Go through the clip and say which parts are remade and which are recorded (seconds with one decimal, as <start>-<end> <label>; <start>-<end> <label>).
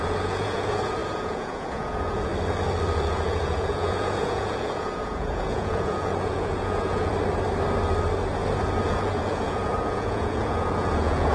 0.0-2.3 remade; 2.3-3.1 recorded; 3.1-7.1 remade; 7.1-8.8 recorded; 8.8-11.3 remade